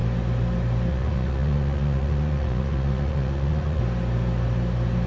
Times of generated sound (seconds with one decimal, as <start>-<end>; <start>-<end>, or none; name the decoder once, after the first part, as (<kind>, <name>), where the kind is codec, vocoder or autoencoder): 0.9-3.8 (vocoder, Vocos)